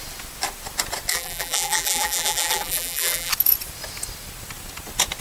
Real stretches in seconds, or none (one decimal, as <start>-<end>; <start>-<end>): 0.0-1.1; 3.3-5.2